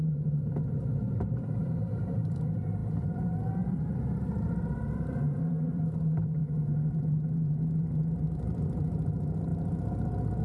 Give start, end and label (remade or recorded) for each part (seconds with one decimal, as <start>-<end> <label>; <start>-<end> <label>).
0.0-6.4 remade; 6.4-6.9 recorded; 6.9-9.5 remade; 9.5-10.4 recorded